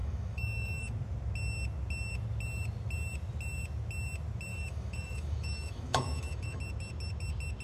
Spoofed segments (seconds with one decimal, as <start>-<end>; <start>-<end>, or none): 0.0-0.9; 4.5-6.6